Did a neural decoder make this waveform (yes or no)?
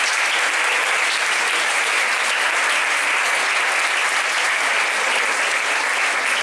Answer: no